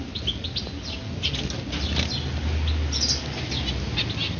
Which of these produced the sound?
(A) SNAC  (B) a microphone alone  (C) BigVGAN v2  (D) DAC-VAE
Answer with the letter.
B